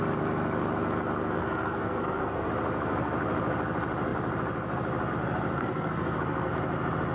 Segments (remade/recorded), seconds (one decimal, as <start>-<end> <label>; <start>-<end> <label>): 0.0-1.4 recorded; 1.4-2.5 remade; 2.5-5.6 recorded; 5.6-6.5 remade; 6.5-7.1 recorded